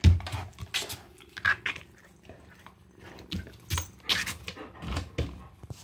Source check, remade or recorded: recorded